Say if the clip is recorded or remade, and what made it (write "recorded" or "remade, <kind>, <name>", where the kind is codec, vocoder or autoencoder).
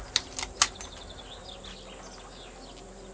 recorded